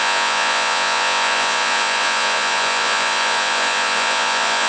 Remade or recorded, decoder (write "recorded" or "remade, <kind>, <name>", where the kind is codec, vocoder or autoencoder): remade, vocoder, Vocos